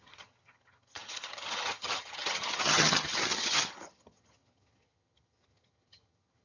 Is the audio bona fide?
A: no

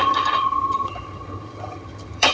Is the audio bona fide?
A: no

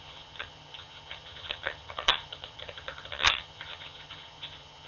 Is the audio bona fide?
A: no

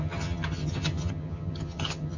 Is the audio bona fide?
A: no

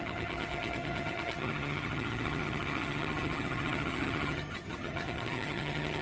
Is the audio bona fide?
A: no